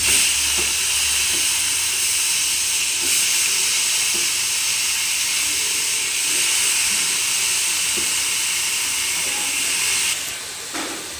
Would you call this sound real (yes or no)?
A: yes